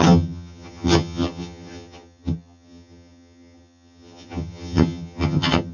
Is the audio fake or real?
fake